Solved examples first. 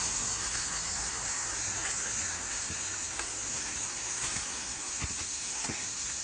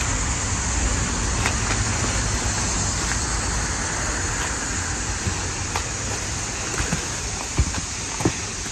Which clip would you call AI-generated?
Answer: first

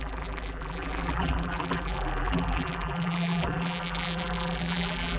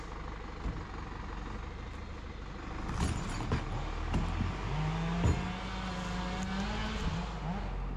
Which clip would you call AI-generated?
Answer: first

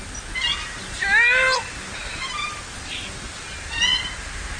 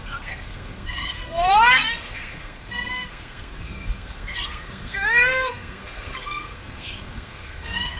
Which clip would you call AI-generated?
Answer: second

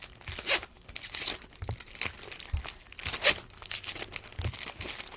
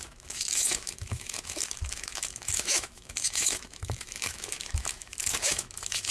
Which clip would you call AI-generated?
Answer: second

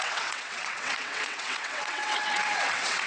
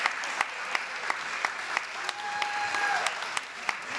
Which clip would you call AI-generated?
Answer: first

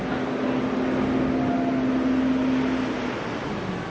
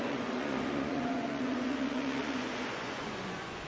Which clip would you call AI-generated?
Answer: second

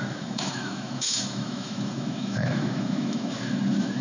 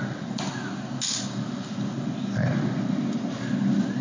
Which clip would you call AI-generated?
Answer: first